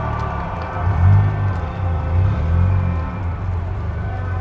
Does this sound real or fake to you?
real